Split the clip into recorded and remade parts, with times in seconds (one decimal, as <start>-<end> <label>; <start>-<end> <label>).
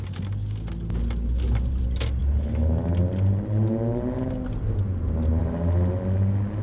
0.0-6.6 recorded